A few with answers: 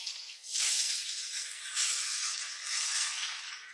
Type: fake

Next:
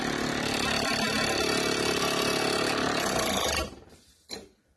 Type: real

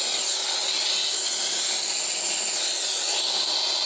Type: real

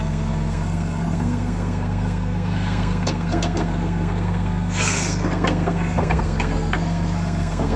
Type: fake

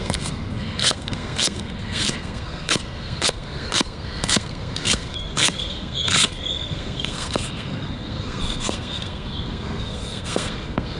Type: fake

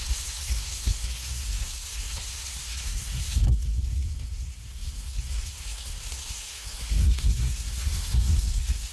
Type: fake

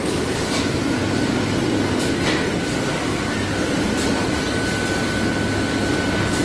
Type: real